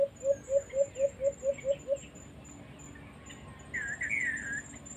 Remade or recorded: recorded